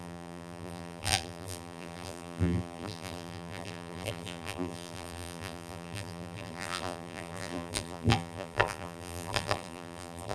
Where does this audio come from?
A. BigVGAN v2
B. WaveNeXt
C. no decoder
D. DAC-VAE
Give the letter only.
A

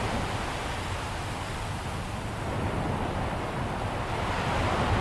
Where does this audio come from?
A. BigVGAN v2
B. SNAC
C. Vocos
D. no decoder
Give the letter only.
D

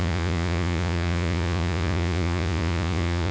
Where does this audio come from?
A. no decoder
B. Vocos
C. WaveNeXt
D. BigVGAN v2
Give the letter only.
B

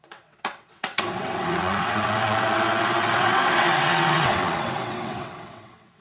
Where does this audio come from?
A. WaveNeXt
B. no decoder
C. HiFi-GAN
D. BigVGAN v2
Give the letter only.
A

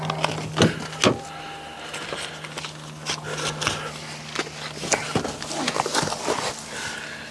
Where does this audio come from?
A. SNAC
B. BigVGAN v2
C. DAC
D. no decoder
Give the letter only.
D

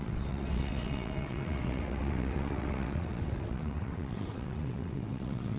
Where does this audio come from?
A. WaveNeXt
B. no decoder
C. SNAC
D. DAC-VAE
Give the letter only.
A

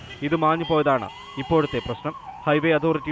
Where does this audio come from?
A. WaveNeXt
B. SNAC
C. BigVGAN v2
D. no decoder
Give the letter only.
D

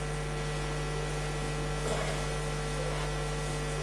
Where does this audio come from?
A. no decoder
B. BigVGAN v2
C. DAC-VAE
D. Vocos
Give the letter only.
A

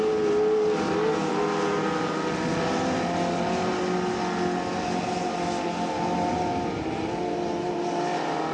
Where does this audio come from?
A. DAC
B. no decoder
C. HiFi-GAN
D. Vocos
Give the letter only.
B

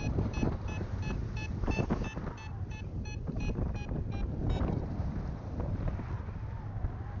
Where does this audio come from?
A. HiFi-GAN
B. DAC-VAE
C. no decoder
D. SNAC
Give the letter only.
C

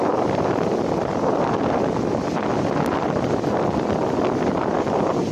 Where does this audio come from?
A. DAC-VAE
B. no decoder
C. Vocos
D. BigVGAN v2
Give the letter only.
B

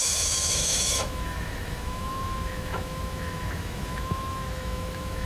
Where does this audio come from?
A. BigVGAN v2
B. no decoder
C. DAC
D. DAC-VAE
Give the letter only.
D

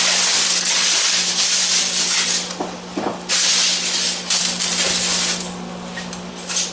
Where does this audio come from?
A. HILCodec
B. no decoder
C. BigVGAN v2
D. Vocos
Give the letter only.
B